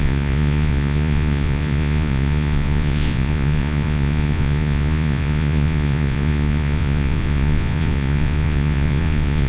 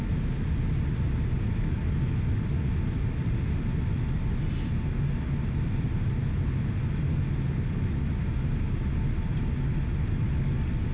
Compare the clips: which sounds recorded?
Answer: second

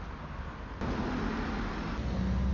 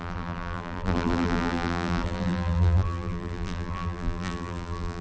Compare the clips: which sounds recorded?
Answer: first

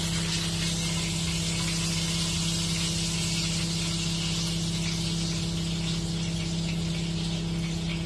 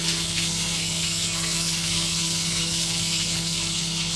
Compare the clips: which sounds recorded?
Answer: first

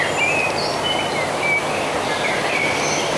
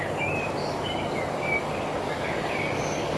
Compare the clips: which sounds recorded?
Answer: first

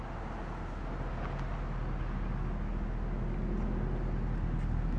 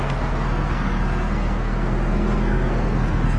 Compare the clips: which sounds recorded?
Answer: first